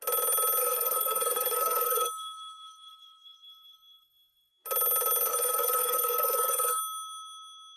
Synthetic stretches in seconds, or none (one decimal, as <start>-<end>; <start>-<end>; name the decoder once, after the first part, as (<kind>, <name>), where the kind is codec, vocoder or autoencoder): 0.6-4.5 (codec, SNAC); 5.3-6.8